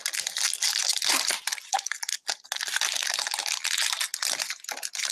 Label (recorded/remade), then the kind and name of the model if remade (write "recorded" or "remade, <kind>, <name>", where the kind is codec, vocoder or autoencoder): recorded